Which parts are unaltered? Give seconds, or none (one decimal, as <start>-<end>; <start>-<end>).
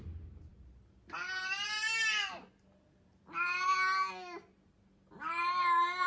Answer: 0.0-6.1